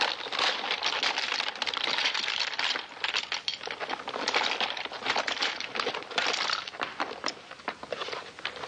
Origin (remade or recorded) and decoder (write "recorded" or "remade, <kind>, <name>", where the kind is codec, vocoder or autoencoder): remade, vocoder, BigVGAN v2